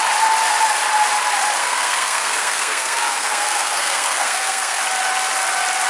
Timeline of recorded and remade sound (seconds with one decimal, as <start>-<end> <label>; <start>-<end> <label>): 0.0-1.6 recorded; 1.6-4.8 remade; 4.8-5.9 recorded